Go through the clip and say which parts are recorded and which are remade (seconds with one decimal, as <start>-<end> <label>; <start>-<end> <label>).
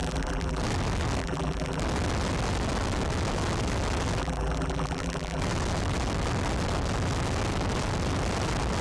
0.0-0.6 remade; 0.6-1.2 recorded; 1.2-1.8 remade; 1.8-4.2 recorded; 4.2-5.4 remade; 5.4-8.8 recorded